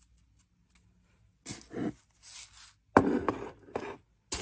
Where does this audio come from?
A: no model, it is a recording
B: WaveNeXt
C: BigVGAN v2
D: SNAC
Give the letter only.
A